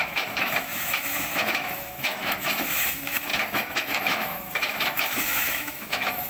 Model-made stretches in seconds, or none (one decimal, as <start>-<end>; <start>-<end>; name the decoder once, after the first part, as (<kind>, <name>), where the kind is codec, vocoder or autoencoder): 0.0-6.3 (autoencoder, DAC-VAE)